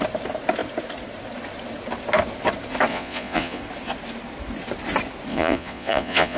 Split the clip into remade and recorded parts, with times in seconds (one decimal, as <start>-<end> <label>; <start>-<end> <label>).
0.0-2.9 recorded; 2.9-3.6 remade; 3.6-5.3 recorded; 5.3-6.4 remade